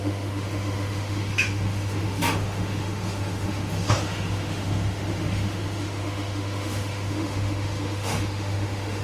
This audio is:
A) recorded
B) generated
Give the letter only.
B